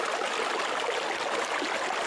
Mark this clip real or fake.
real